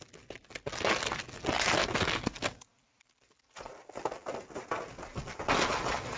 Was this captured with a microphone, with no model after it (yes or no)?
yes